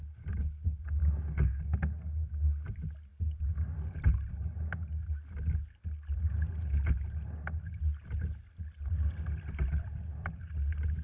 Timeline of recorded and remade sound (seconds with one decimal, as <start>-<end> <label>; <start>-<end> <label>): 0.0-11.0 recorded